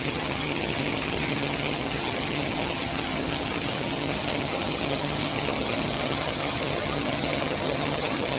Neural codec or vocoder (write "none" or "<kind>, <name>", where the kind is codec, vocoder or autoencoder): vocoder, HiFi-GAN